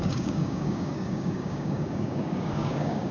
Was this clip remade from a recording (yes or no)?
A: yes